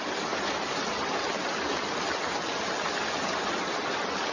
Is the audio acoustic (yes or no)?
yes